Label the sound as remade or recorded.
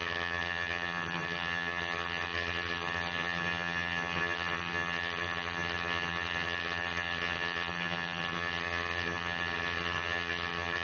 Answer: remade